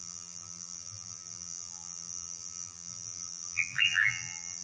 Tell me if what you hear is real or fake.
fake